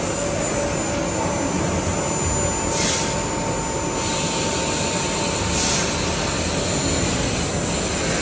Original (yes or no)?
yes